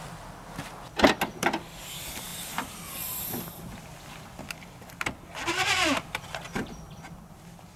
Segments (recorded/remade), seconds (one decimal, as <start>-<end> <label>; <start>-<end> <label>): 0.0-7.8 recorded